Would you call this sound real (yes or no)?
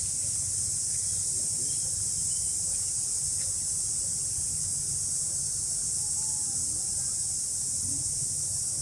yes